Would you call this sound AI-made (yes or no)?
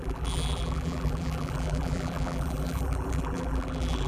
yes